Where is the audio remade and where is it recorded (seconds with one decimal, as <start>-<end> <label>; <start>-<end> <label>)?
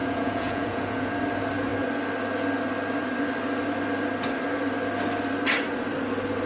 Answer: 0.0-1.1 remade; 1.1-6.5 recorded